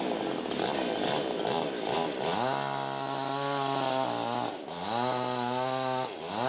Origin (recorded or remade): recorded